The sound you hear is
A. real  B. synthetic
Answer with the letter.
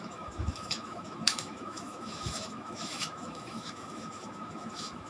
B